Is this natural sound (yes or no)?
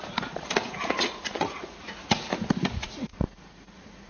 no